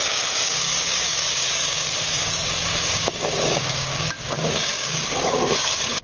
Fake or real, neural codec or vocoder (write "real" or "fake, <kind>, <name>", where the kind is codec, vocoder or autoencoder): fake, codec, DAC